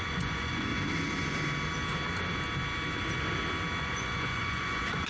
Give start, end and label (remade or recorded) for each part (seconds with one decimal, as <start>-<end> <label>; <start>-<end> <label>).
0.0-0.7 remade; 0.7-3.8 recorded; 3.8-5.1 remade